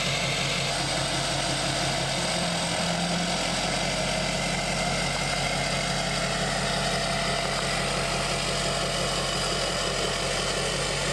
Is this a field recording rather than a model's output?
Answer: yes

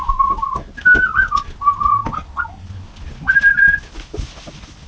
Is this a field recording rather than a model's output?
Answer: yes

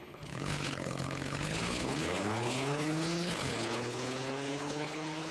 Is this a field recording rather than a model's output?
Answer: no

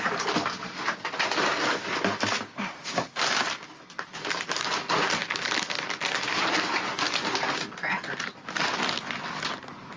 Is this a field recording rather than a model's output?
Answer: yes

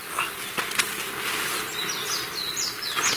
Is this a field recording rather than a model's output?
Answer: yes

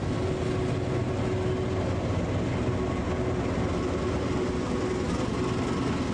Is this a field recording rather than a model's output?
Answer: yes